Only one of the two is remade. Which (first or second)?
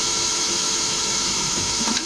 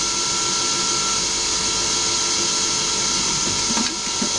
first